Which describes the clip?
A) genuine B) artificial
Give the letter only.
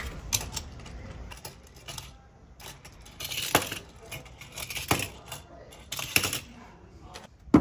A